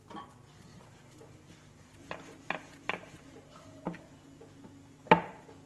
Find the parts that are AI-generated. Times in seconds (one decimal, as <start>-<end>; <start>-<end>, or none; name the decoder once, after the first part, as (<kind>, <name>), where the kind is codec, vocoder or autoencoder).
0.7-4.1 (vocoder, BigVGAN v2)